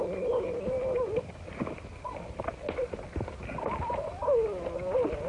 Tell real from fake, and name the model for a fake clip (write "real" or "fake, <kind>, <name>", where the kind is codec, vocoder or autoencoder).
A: real